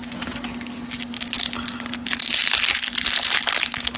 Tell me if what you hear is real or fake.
real